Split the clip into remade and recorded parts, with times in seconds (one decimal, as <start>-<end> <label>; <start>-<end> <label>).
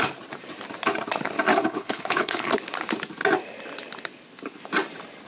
0.0-1.5 recorded; 1.5-2.5 remade; 2.5-5.3 recorded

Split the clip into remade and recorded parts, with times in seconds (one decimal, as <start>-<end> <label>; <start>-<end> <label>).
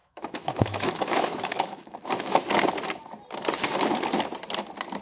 0.0-2.4 remade; 2.4-5.0 recorded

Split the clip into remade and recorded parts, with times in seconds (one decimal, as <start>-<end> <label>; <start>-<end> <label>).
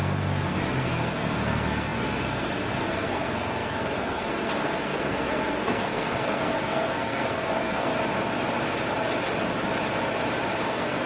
0.0-7.9 remade; 7.9-10.6 recorded; 10.6-11.1 remade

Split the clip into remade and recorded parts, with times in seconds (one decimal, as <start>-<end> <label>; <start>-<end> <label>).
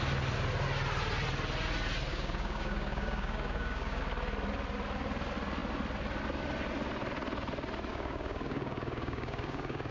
0.0-2.1 recorded; 2.1-4.0 remade; 4.0-7.9 recorded; 7.9-9.9 remade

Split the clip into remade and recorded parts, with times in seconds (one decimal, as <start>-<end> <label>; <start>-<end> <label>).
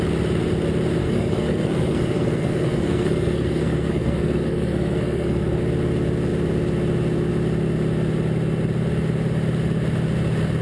0.0-1.0 recorded; 1.0-5.6 remade; 5.6-10.6 recorded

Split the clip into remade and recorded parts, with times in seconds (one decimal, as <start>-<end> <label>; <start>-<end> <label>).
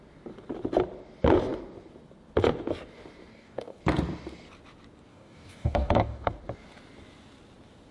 0.0-3.3 recorded; 3.3-3.8 remade; 3.8-5.1 recorded; 5.1-6.3 remade; 6.3-7.9 recorded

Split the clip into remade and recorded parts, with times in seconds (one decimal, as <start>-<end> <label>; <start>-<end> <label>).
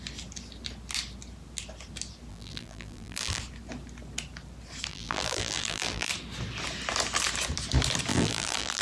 0.0-2.3 recorded; 2.3-3.4 remade; 3.4-4.9 recorded; 4.9-6.1 remade; 6.1-8.1 recorded; 8.1-8.8 remade